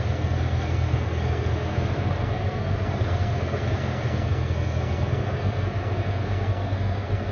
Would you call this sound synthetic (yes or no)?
yes